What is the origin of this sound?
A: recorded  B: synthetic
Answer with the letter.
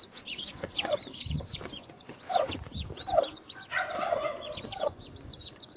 B